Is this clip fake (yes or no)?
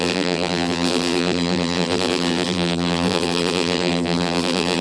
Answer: yes